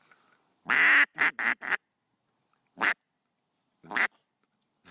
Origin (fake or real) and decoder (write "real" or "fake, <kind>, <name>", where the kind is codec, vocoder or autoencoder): real